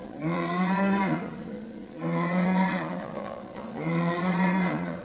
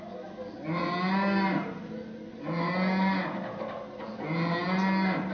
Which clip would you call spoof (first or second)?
first